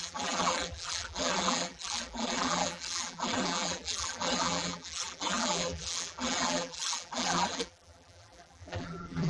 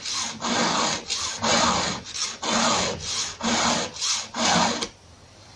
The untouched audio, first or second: second